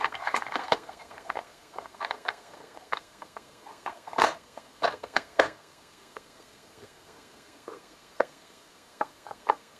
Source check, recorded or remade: remade